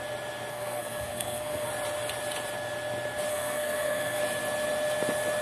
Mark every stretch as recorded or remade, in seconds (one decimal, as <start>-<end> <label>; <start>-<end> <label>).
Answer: 0.0-0.5 recorded; 0.5-1.7 remade; 1.7-3.3 recorded; 3.3-4.2 remade; 4.2-5.4 recorded